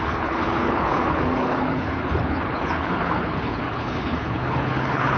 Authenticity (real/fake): fake